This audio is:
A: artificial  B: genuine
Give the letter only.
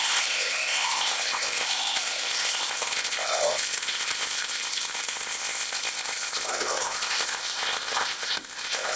A